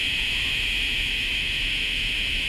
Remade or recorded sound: remade